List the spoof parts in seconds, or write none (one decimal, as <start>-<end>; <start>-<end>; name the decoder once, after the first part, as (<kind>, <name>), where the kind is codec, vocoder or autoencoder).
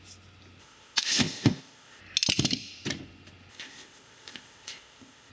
0.6-2.0 (codec, ZipCodec); 3.5-5.3